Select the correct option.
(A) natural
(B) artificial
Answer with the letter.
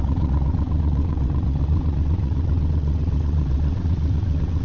B